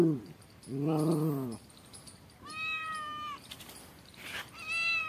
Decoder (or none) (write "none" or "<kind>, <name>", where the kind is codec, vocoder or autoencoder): vocoder, BigVGAN v2